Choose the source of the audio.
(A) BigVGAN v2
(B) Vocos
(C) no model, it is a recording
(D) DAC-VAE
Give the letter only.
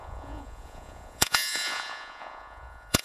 B